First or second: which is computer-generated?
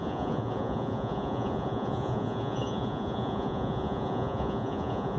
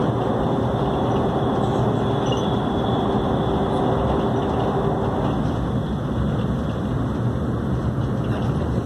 first